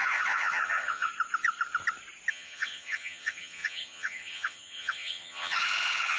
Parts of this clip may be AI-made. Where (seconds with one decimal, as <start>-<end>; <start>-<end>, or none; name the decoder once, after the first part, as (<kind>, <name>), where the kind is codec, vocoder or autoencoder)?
0.0-1.1 (vocoder, HiFi-GAN); 2.3-6.2